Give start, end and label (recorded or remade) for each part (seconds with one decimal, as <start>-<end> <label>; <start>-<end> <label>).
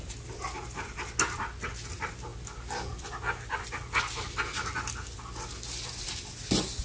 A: 0.0-6.8 recorded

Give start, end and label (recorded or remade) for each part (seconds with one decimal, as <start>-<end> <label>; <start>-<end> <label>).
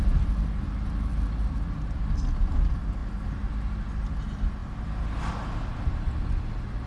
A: 0.0-6.9 recorded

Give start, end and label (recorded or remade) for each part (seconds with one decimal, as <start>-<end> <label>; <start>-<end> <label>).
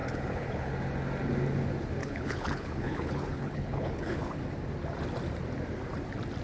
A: 0.0-0.7 remade; 0.7-2.0 recorded; 2.0-4.4 remade; 4.4-6.4 recorded